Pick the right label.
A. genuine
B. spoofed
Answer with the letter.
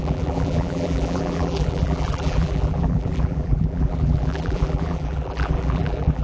B